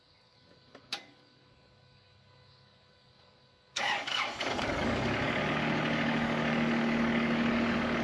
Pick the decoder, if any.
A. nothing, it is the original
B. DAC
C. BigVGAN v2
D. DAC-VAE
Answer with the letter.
B